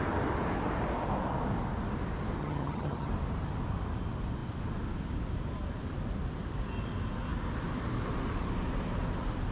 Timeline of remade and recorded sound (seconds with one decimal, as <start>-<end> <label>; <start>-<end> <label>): 0.0-2.4 recorded; 2.4-3.1 remade; 3.1-9.5 recorded